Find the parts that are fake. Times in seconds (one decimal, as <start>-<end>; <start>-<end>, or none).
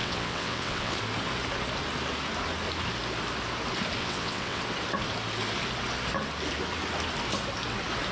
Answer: 0.0-1.0; 4.0-4.6